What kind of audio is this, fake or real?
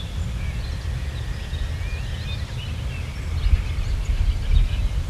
real